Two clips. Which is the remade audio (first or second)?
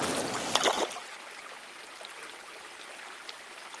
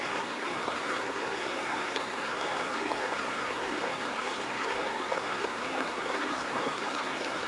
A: second